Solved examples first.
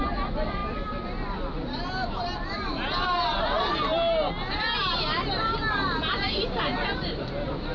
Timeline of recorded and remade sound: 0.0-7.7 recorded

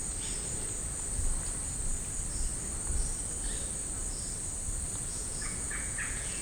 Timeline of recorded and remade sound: 0.0-5.1 recorded; 5.1-6.4 remade

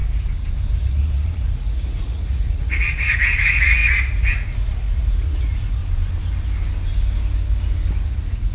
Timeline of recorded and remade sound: 0.0-0.8 recorded; 0.8-5.8 remade; 5.8-8.0 recorded; 8.0-8.5 remade